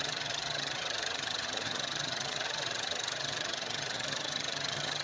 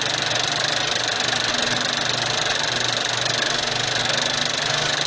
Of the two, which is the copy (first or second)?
first